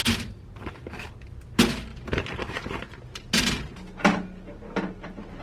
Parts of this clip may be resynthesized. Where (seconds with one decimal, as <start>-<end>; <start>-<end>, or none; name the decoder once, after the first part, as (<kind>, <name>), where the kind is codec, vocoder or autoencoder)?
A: none